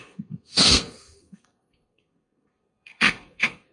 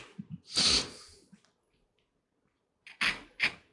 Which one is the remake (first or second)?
first